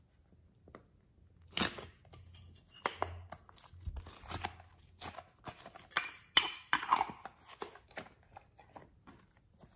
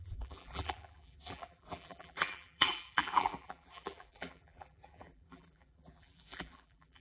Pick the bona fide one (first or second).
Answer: first